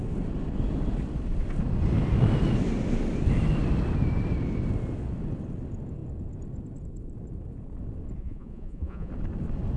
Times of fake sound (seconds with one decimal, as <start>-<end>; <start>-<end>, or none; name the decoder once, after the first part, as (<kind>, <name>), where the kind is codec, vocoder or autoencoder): 8.2-9.1 (vocoder, Vocos)